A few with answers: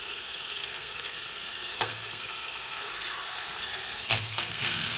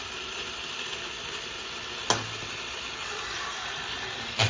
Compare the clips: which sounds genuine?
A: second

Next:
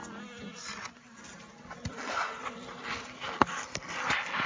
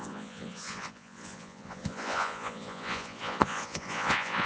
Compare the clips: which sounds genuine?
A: first